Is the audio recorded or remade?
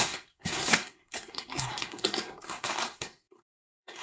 remade